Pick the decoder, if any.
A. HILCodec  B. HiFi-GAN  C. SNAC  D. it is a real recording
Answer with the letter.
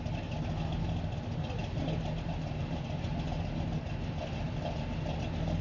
D